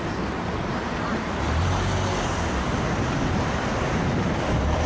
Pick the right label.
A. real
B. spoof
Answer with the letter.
B